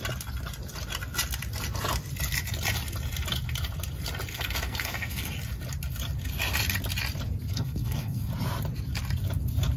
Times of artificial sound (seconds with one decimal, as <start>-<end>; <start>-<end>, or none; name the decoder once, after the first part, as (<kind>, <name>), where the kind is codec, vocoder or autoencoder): 4.3-5.3 (codec, SNAC); 7.5-8.3